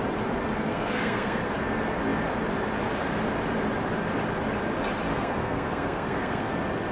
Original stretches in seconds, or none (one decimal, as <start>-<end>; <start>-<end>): 0.0-0.7; 1.5-5.1; 6.5-6.9